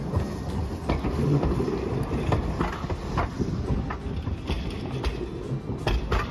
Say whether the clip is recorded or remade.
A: recorded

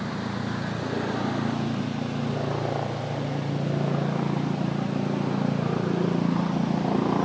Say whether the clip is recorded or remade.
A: recorded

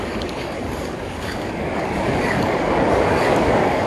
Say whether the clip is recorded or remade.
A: remade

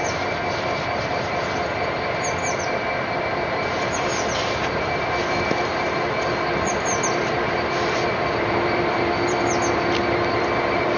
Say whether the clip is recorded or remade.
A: remade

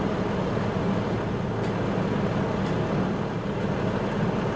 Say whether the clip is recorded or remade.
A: recorded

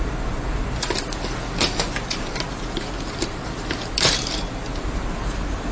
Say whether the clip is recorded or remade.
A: recorded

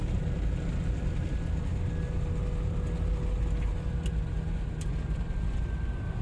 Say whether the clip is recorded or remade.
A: recorded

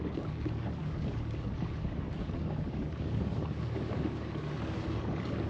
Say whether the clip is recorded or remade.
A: remade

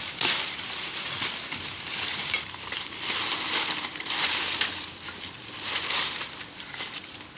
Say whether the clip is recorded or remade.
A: remade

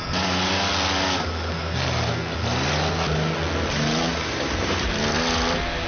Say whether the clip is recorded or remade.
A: recorded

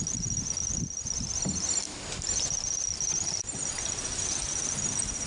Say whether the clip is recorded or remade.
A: recorded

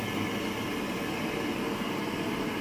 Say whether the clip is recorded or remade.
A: recorded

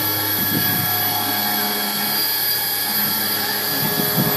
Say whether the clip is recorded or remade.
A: recorded